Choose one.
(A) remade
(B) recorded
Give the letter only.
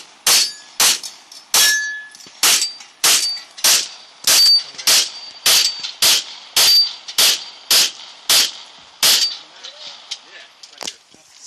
B